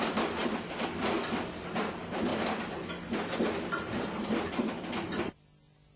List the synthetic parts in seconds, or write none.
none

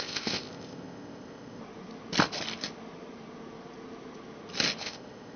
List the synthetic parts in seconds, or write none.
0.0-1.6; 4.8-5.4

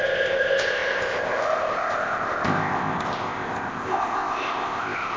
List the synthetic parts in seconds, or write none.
0.0-5.2